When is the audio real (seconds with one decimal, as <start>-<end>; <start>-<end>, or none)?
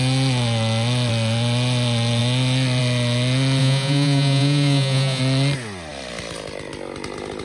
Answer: 0.0-3.6; 5.2-7.4